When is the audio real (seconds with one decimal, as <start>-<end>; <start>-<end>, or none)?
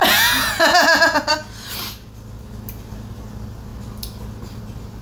1.3-5.0